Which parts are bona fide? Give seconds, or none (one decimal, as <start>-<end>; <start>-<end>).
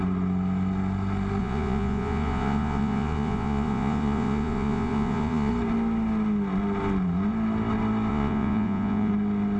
0.0-1.4; 5.5-8.1; 9.1-9.6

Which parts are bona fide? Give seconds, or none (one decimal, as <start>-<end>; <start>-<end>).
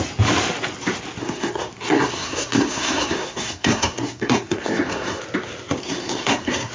0.0-1.2; 5.2-5.8